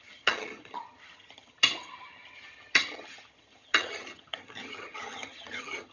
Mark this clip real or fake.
fake